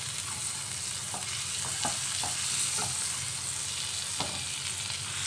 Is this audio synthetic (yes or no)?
no